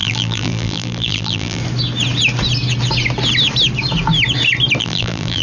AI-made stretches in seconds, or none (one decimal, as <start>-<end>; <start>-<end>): 0.0-1.6; 4.8-5.4